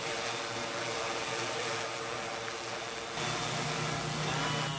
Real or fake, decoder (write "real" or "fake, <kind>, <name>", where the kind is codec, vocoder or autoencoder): real